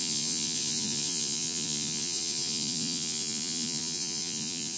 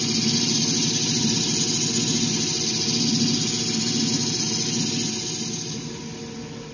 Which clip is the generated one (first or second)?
first